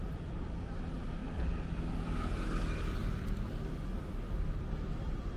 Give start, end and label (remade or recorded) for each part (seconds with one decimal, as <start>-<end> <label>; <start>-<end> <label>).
0.0-5.4 recorded